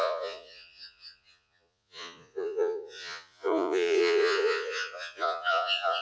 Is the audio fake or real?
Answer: fake